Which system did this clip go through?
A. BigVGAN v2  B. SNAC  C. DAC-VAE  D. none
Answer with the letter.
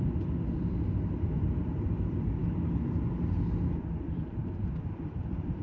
A